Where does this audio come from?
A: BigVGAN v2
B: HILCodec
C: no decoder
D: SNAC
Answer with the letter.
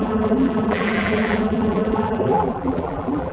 A